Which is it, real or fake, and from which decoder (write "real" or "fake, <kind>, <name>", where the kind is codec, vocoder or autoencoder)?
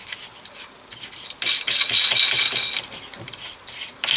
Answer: fake, vocoder, BigVGAN v2